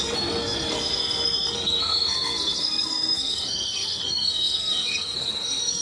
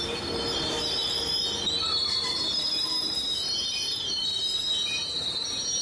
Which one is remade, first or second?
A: first